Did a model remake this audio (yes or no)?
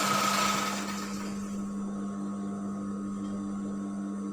no